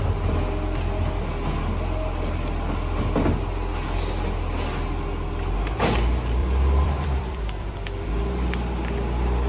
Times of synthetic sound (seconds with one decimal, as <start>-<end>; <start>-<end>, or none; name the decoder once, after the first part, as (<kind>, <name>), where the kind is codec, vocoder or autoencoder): 6.4-8.1 (vocoder, BigVGAN v2)

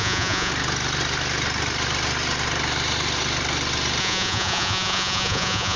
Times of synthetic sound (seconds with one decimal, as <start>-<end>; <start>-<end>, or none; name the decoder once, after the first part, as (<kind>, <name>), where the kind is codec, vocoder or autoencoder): 0.0-0.5 (vocoder, Vocos); 4.0-5.8

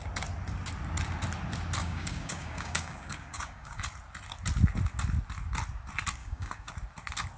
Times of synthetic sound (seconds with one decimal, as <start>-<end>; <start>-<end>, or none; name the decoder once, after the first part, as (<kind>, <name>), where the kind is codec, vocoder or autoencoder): 1.8-3.8 (codec, DAC); 6.2-6.7

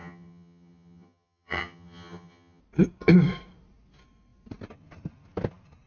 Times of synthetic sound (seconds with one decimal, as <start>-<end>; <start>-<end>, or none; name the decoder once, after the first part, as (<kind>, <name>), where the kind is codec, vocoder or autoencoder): 0.0-2.6 (vocoder, HiFi-GAN)

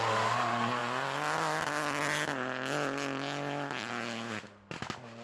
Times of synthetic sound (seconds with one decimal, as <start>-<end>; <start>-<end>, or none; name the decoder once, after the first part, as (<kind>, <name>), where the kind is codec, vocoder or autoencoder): none